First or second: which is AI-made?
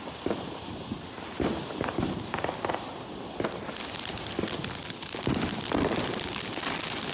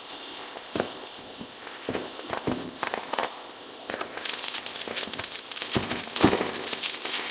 second